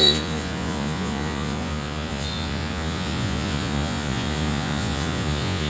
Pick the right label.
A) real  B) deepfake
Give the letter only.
B